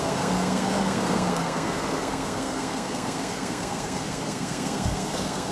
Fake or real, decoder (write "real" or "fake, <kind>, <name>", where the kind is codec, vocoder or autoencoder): fake, codec, SNAC